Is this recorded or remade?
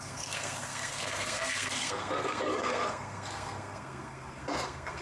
remade